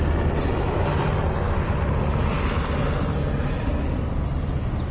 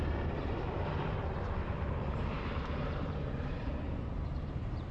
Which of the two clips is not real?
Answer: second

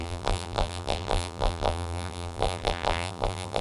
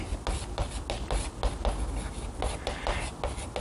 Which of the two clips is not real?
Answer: first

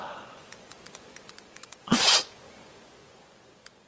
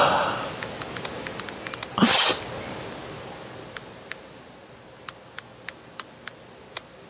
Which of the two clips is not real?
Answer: first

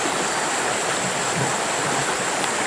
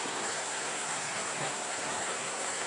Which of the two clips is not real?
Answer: second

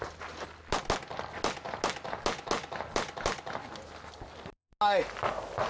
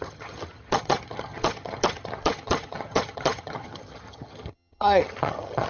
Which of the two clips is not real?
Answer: second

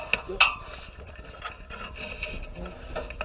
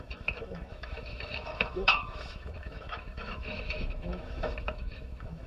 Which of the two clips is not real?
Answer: second